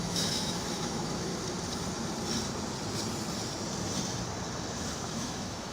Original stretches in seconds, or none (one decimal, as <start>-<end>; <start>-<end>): 1.3-4.7